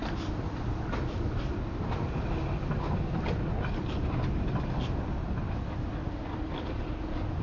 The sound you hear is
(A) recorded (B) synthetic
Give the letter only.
A